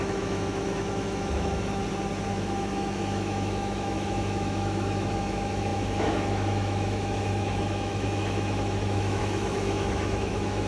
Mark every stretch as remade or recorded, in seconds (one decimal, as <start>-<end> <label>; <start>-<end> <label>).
0.0-1.8 remade; 1.8-2.3 recorded; 2.3-10.7 remade

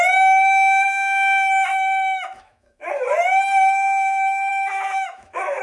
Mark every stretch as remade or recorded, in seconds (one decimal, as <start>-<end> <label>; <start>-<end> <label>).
0.0-1.7 recorded; 1.7-2.9 remade; 2.9-4.5 recorded; 4.5-5.6 remade